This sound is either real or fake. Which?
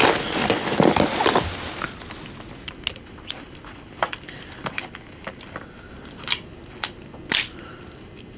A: real